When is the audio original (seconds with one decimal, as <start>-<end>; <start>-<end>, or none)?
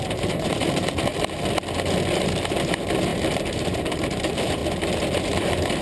1.1-2.2; 4.6-5.2